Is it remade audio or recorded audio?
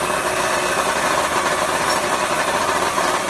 recorded